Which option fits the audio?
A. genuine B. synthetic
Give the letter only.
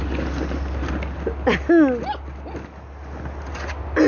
A